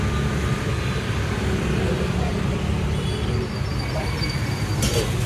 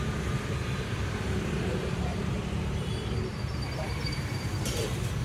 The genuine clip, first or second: first